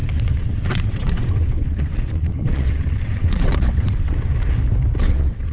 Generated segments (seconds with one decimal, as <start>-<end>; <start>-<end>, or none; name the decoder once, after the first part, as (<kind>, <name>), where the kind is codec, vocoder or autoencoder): 0.0-4.3 (vocoder, WaveNeXt); 5.0-5.5